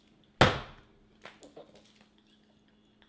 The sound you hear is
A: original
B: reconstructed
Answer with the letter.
A